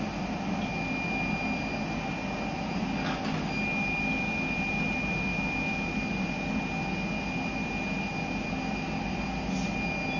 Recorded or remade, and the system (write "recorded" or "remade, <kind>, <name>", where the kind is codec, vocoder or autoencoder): recorded